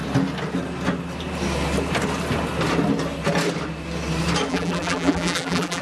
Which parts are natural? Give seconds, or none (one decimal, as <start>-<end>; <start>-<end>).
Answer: 0.0-4.5